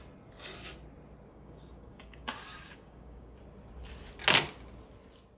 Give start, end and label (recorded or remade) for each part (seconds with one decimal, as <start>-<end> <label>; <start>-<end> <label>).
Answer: 0.0-1.3 recorded; 1.3-3.4 remade; 3.4-5.4 recorded